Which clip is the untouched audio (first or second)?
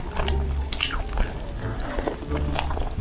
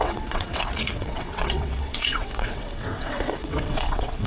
first